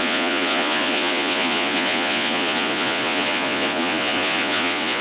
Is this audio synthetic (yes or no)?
yes